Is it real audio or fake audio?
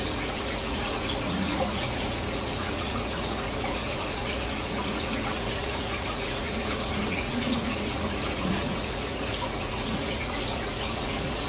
fake